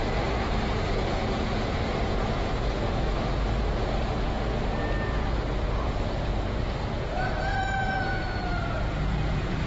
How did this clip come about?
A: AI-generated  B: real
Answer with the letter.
A